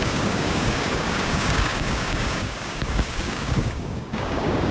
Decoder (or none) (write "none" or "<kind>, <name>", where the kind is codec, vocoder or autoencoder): codec, DAC